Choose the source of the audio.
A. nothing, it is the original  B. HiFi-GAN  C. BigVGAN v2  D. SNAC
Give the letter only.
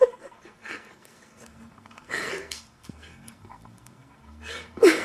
D